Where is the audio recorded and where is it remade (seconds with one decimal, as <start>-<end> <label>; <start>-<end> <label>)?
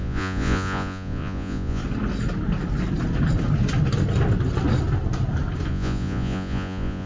0.0-1.8 remade; 1.8-5.7 recorded; 5.7-7.1 remade